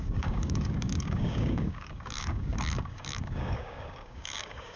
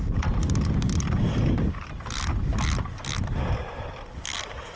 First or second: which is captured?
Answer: second